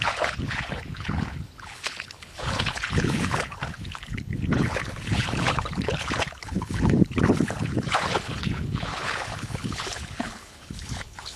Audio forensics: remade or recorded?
remade